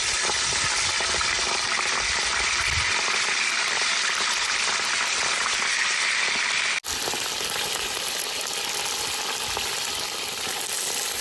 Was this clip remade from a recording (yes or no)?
no